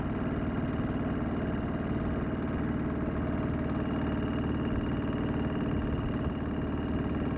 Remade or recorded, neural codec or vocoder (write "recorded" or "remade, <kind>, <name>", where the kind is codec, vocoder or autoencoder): recorded